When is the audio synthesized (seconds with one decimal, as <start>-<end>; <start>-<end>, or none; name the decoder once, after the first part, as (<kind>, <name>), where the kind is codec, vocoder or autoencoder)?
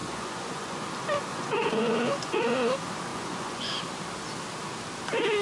0.0-0.8 (vocoder, Vocos); 1.3-2.5; 3.1-3.8